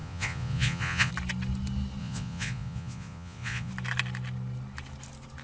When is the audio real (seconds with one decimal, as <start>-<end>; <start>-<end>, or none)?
1.1-2.0; 3.7-5.4